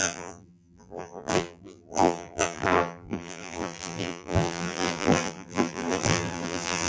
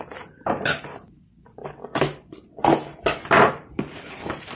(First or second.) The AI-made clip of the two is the first